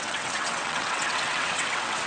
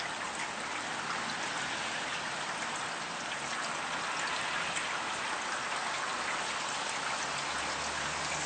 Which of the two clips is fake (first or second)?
first